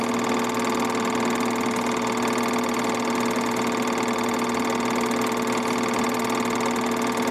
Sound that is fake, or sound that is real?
real